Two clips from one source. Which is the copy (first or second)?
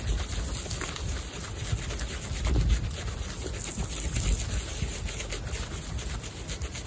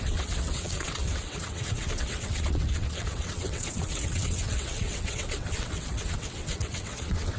second